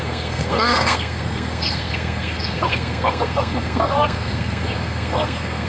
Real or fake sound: fake